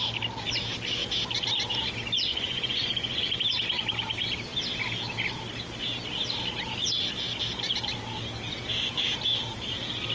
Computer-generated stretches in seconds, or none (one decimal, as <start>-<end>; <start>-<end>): 2.3-3.2